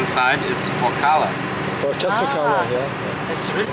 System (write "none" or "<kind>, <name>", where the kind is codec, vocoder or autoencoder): none